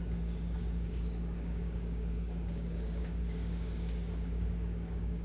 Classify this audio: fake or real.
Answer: fake